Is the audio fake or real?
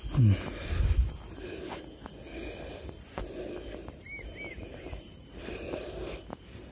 real